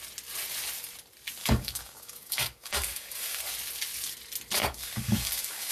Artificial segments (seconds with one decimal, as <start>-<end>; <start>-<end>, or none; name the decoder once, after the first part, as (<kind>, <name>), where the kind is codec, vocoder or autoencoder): 1.4-3.4 (codec, DAC); 4.6-5.7